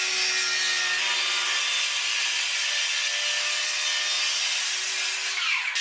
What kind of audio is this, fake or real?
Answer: real